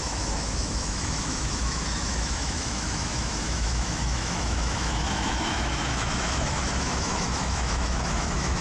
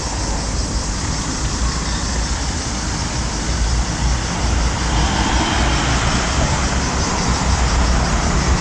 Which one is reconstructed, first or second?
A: first